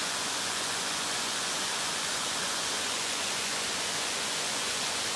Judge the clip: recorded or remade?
remade